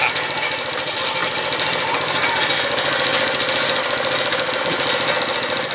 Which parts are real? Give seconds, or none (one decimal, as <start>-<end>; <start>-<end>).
0.0-5.7